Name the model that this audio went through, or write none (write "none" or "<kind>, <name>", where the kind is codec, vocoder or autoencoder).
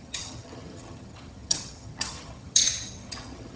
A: vocoder, HiFi-GAN